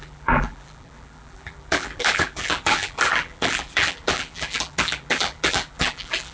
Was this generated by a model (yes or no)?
yes